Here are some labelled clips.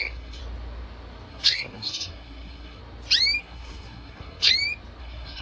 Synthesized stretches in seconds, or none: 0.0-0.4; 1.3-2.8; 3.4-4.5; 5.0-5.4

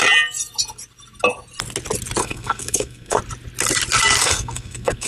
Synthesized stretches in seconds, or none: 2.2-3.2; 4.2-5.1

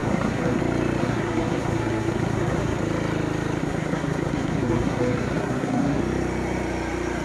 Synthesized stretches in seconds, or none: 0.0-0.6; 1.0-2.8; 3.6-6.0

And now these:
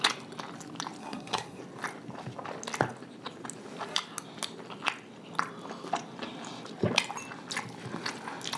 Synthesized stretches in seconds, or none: 1.0-1.6